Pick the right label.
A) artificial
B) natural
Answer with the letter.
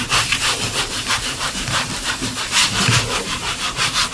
B